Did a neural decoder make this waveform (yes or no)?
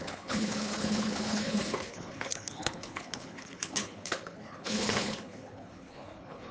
yes